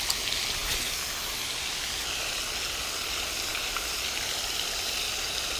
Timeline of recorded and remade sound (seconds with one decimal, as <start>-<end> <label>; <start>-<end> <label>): 0.0-5.6 recorded